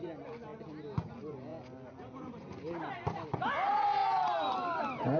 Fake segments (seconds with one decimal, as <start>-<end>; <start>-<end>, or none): none